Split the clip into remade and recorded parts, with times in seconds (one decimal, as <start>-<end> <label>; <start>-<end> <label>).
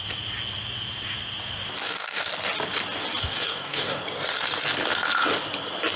0.0-1.8 recorded; 1.8-2.3 remade; 2.3-3.2 recorded; 3.2-4.0 remade; 4.0-6.0 recorded